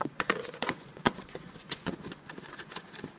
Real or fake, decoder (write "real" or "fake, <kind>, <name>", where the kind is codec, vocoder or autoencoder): fake, vocoder, Vocos